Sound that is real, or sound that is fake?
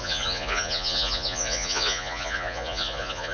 fake